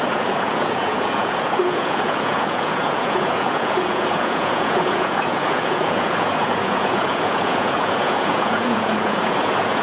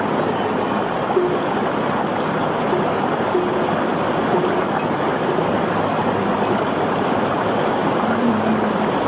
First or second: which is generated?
first